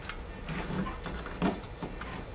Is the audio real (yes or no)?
yes